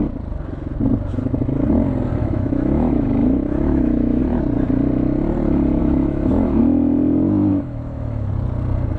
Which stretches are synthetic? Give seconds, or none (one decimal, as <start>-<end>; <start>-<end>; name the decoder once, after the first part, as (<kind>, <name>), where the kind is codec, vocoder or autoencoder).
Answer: 2.2-4.2 (autoencoder, DAC-VAE); 5.8-6.6; 7.5-8.3